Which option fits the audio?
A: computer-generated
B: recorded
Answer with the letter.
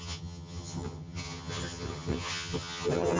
A